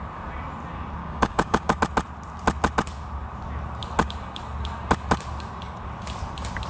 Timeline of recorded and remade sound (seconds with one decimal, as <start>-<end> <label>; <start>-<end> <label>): 0.0-1.0 recorded; 1.0-1.8 remade; 1.8-6.7 recorded